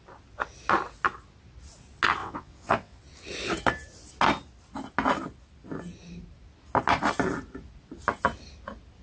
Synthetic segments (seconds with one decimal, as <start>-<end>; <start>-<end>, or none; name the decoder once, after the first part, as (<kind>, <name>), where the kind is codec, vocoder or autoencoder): 2.2-3.0 (vocoder, WaveNeXt)